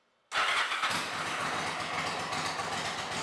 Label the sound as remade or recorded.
recorded